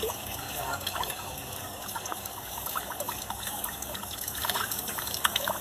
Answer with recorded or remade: remade